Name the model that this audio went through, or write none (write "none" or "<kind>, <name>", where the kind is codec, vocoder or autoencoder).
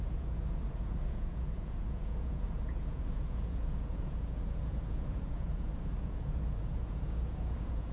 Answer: vocoder, Vocos